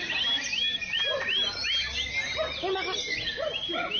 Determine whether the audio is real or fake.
real